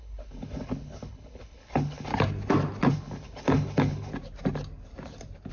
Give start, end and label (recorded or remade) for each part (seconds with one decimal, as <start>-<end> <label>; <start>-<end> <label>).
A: 0.0-2.1 remade; 2.1-2.9 recorded; 2.9-4.1 remade; 4.1-5.5 recorded